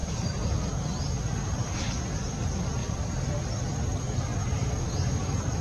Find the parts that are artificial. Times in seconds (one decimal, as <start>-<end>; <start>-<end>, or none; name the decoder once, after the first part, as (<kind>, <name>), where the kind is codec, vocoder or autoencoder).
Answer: 0.0-5.6 (vocoder, BigVGAN v2)